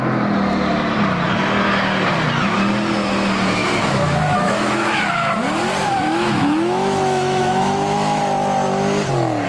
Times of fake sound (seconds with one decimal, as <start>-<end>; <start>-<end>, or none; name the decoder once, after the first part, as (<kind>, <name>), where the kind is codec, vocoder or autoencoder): 3.6-5.0 (autoencoder, DAC-VAE); 5.8-8.2